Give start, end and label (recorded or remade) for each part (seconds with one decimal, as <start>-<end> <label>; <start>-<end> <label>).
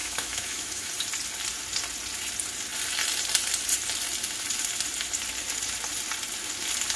0.0-0.9 remade; 0.9-7.0 recorded